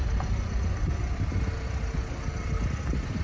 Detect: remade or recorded recorded